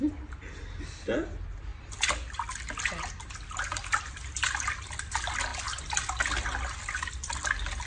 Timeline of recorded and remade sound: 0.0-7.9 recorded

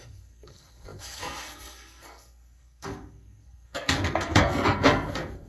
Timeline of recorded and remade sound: 0.0-5.5 remade

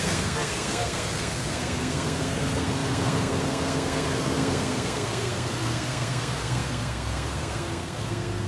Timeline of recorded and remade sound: 0.0-8.5 remade